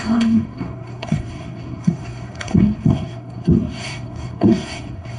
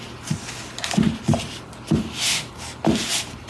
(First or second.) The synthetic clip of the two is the first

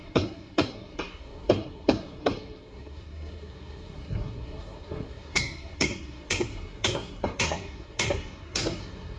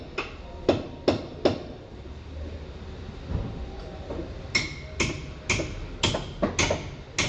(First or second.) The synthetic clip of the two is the first